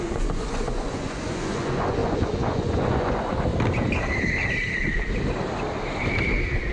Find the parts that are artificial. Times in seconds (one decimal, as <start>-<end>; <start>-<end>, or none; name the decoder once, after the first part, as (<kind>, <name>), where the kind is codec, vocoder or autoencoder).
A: 0.0-3.5 (vocoder, Vocos)